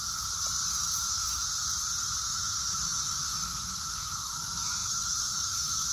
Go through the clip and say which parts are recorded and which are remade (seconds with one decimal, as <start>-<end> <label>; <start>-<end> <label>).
0.0-0.7 recorded; 0.7-1.5 remade; 1.5-2.2 recorded; 2.2-5.9 remade